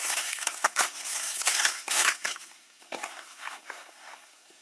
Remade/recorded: remade